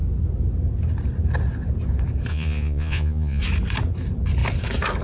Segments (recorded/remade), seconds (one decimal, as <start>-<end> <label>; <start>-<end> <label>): 0.0-2.3 recorded; 2.3-3.4 remade; 3.4-5.0 recorded